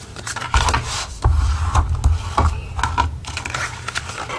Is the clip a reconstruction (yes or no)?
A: no